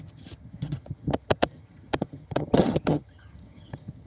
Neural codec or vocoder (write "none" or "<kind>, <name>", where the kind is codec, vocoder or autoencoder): vocoder, HiFi-GAN